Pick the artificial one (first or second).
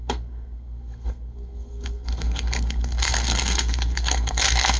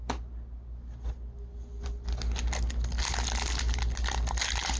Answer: first